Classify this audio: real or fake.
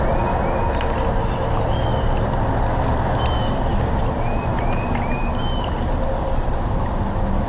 real